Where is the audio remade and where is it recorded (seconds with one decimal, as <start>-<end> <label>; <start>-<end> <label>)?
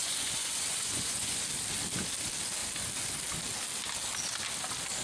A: 0.0-1.4 remade; 1.4-5.0 recorded